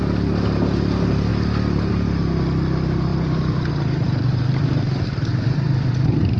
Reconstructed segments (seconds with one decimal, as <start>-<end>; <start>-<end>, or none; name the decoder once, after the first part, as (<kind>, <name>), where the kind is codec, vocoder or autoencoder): 1.3-1.9 (vocoder, BigVGAN v2); 3.1-6.4